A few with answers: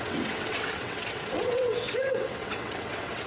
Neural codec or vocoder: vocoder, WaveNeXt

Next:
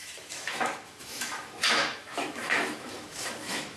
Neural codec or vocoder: autoencoder, DAC-VAE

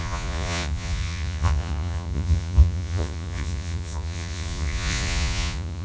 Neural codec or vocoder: vocoder, Vocos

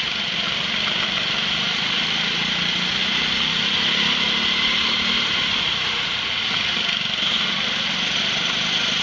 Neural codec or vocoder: none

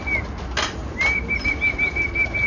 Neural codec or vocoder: none